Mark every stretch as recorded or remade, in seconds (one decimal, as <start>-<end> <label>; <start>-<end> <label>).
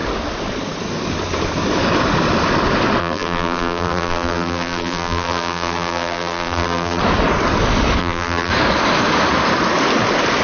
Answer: 0.0-3.0 recorded; 3.0-7.0 remade; 7.0-8.0 recorded; 8.0-8.5 remade; 8.5-10.4 recorded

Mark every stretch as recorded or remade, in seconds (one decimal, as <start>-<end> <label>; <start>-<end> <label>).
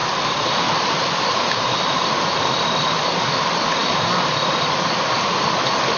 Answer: 0.0-6.0 recorded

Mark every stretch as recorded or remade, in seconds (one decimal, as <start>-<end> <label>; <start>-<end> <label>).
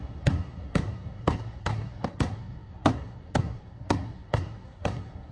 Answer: 0.0-5.3 remade